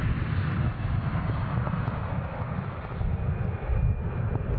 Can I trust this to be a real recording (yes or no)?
yes